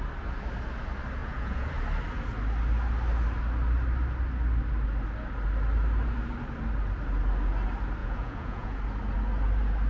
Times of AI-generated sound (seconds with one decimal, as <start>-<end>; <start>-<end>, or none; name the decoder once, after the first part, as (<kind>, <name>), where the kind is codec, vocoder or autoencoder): 1.2-1.7 (vocoder, Vocos); 8.0-8.8